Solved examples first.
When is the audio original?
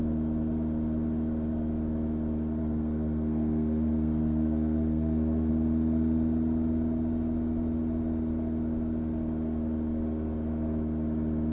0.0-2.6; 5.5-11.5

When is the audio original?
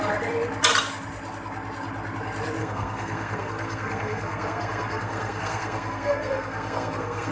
0.0-2.6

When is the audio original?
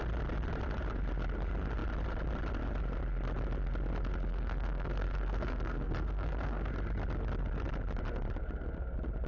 0.0-4.3; 6.7-9.3